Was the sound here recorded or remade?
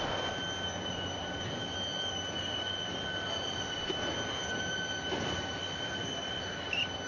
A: recorded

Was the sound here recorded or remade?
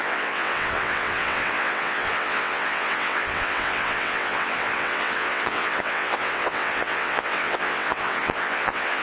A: remade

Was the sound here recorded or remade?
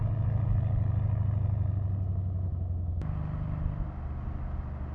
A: recorded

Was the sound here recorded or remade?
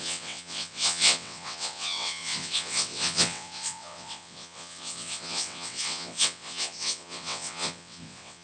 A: remade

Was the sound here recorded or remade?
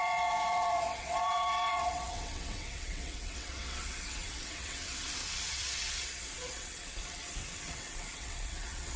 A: remade